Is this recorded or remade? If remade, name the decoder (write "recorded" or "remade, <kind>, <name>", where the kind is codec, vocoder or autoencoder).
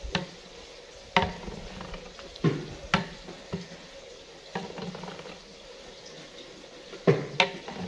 recorded